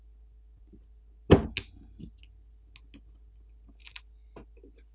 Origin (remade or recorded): recorded